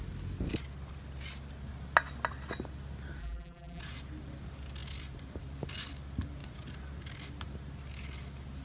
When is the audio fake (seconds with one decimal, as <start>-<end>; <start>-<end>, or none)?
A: 3.2-3.8